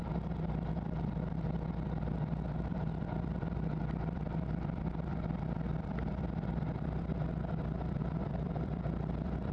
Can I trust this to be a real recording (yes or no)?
no